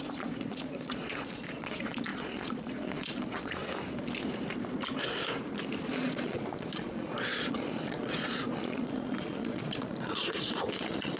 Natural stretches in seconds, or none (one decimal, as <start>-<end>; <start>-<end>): 3.6-5.8